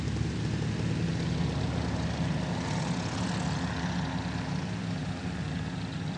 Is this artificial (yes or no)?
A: no